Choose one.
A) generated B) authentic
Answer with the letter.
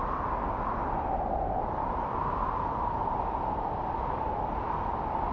B